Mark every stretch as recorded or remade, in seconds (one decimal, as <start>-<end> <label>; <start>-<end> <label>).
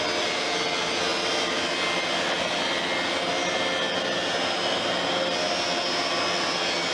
0.0-6.9 recorded